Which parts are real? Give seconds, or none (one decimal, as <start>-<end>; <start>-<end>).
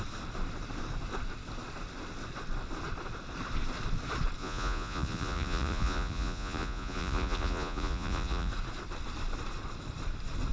0.0-4.4; 8.5-10.5